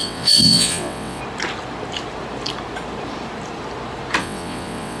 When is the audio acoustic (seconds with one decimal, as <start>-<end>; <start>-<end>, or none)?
1.2-4.2